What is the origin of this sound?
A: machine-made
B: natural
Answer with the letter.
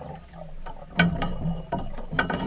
B